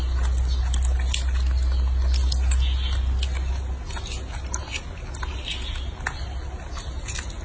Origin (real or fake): real